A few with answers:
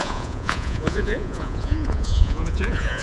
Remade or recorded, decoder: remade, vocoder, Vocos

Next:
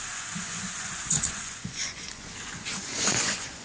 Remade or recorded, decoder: remade, vocoder, Vocos